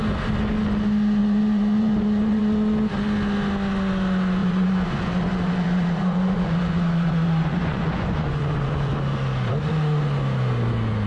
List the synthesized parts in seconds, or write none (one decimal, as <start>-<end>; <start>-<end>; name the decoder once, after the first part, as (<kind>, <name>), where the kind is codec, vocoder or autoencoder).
1.2-2.4 (vocoder, Vocos); 4.4-8.9